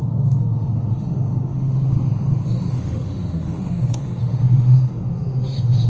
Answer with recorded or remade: remade